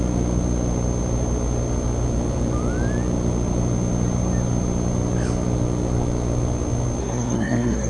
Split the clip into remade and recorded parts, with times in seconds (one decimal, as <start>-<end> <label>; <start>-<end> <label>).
0.0-7.0 recorded; 7.0-7.9 remade